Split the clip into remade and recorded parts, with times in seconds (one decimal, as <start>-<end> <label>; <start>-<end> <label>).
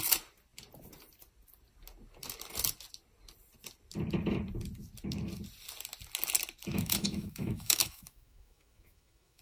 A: 0.0-6.7 recorded; 6.7-9.4 remade